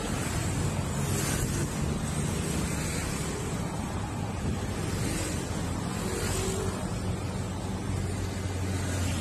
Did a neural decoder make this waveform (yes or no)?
no